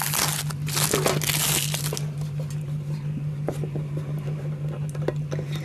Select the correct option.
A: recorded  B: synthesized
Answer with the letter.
A